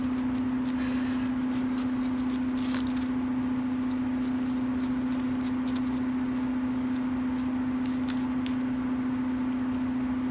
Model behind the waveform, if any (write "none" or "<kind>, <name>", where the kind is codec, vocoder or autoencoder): none